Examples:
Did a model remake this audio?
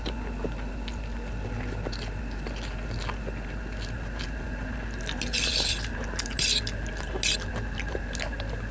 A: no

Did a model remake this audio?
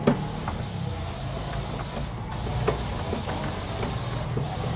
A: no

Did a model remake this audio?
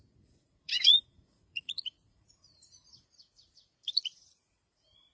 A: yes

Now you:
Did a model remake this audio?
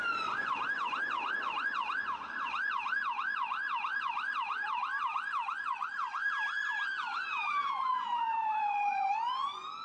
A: yes